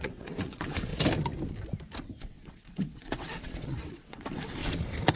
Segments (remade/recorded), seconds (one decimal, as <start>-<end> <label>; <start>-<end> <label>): 0.0-0.9 remade; 0.9-2.2 recorded; 2.2-4.6 remade; 4.6-5.2 recorded